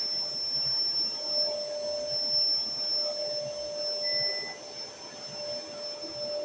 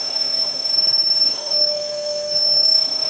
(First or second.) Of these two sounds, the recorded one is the first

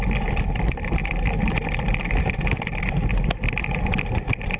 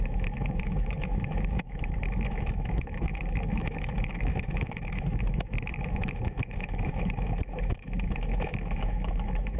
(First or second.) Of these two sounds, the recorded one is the first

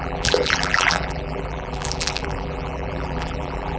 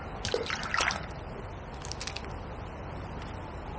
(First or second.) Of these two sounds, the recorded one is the second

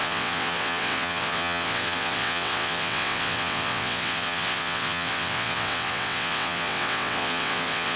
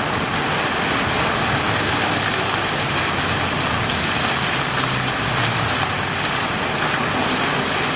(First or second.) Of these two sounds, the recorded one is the second